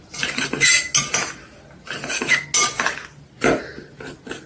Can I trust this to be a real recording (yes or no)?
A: yes